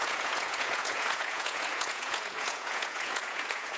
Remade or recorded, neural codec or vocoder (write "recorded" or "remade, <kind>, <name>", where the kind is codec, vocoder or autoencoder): remade, vocoder, Vocos